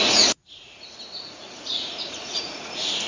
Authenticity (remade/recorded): remade